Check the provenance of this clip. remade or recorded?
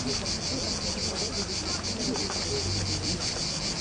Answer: recorded